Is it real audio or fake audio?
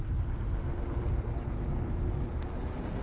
real